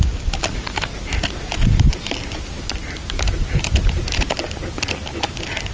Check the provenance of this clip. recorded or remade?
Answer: recorded